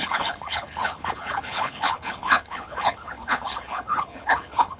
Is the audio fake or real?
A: fake